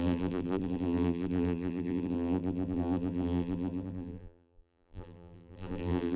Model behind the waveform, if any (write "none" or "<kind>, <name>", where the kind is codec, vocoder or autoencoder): vocoder, BigVGAN v2